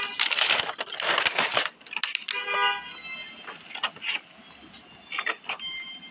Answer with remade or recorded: recorded